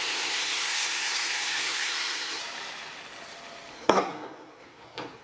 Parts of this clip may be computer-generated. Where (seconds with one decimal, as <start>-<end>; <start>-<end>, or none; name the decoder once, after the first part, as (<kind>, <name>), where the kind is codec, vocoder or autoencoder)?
0.0-2.4 (codec, SNAC); 3.7-5.2